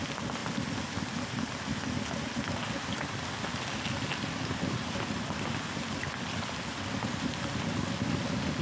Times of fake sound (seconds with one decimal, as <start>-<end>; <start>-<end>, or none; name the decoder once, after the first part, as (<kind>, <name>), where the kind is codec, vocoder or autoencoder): none